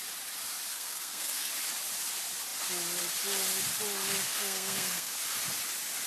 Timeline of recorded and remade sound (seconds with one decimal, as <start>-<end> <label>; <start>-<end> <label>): 0.0-0.7 recorded; 0.7-1.5 remade; 1.5-4.2 recorded; 4.2-5.1 remade; 5.1-6.1 recorded